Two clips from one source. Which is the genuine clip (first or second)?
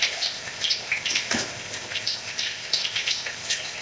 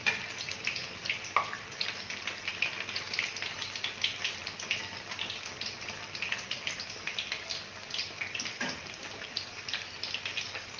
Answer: second